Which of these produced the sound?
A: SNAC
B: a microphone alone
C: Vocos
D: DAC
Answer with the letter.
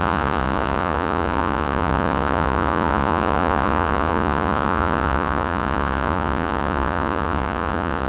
C